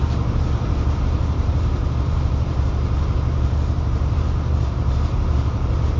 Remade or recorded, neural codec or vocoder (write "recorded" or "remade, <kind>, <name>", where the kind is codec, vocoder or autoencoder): remade, vocoder, BigVGAN v2